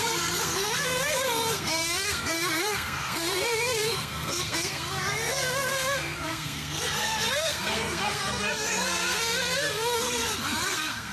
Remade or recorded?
remade